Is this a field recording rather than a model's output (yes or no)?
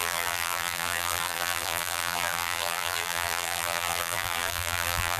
no